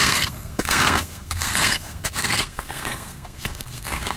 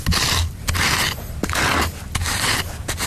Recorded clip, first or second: second